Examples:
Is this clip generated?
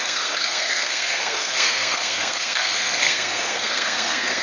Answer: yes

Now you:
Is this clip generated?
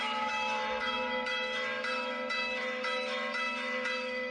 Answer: yes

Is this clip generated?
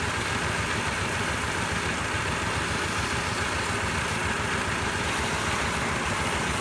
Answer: no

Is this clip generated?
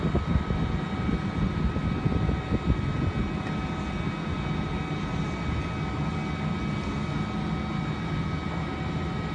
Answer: no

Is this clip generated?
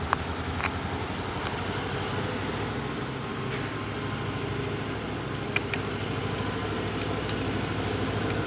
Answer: no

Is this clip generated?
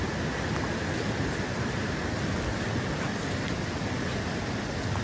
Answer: no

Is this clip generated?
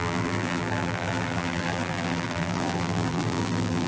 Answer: yes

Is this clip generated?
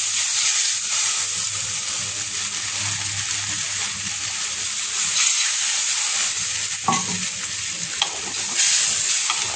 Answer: no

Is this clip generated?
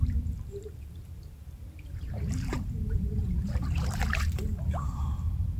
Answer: yes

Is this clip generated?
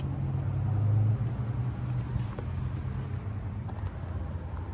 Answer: no